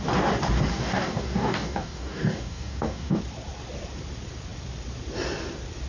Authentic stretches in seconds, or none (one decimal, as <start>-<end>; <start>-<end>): 0.0-0.7; 3.2-5.9